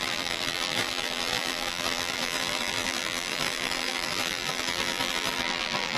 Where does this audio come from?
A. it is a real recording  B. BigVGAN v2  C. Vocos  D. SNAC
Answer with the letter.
B